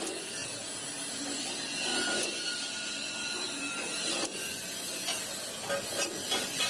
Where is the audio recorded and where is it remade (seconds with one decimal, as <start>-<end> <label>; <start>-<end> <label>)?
0.0-0.4 remade; 0.4-1.1 recorded; 1.1-5.1 remade; 5.1-5.8 recorded; 5.8-6.7 remade